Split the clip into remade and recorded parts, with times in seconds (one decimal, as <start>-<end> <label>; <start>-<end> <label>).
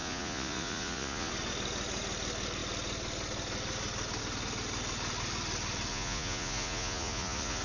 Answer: 0.0-1.3 remade; 1.3-5.9 recorded; 5.9-7.6 remade